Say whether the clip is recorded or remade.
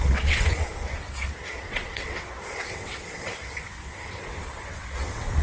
remade